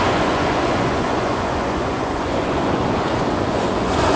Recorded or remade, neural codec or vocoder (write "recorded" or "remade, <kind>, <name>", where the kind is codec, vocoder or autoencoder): remade, vocoder, Vocos